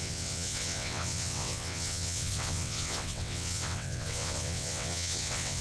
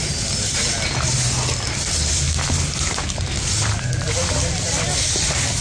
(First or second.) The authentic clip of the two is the second